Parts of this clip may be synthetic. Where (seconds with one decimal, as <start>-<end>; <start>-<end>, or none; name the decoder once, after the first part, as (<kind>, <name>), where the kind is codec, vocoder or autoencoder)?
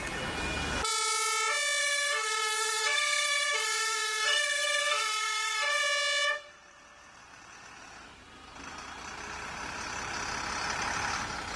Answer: 1.8-5.8 (codec, SNAC)